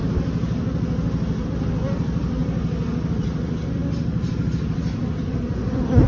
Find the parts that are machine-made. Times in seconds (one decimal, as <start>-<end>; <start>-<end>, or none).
1.4-2.4; 3.1-6.1